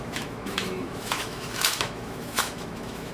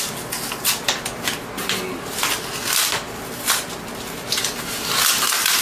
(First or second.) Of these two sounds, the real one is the second